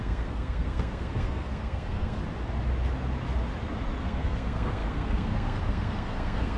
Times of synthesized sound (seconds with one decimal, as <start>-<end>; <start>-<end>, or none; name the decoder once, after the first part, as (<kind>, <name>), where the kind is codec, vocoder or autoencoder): 0.0-2.2 (codec, SNAC); 4.0-6.6